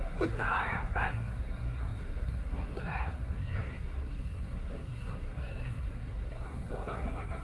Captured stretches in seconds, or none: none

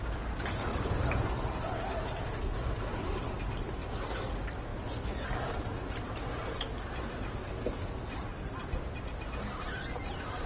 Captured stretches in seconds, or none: 0.0-0.7; 1.3-4.7; 5.6-8.3; 9.3-10.5

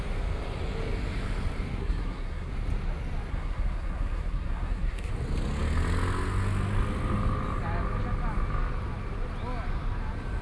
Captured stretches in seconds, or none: 0.0-1.8; 2.5-3.3; 5.1-10.4

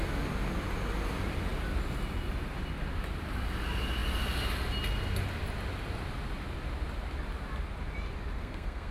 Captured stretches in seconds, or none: 0.0-8.4

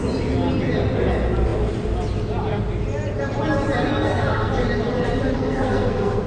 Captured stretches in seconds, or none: 0.0-3.9; 4.5-5.3

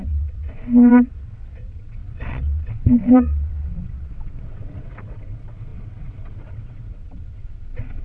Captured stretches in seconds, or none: none

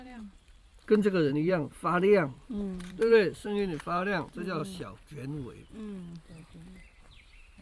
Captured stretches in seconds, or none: 4.6-7.0